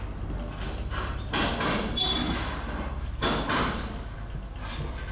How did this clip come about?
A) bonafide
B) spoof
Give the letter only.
A